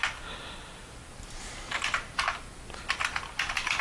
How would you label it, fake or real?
real